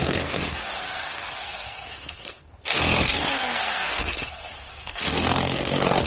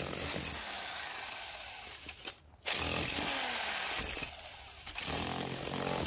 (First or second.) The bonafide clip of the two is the second